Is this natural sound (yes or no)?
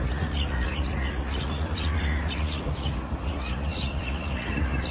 no